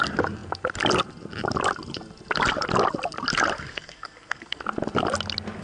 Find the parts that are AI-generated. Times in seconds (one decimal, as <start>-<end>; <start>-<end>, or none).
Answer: 3.7-4.6